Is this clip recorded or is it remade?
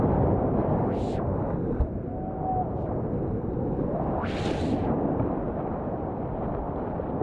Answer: recorded